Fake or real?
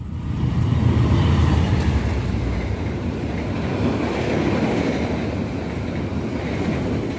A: real